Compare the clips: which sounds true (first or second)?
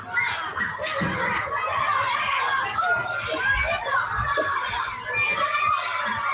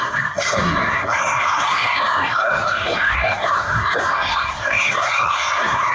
first